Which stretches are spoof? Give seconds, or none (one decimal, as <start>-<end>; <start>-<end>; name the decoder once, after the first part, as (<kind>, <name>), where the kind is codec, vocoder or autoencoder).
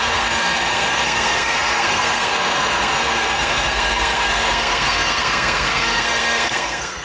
0.0-7.0 (codec, SNAC)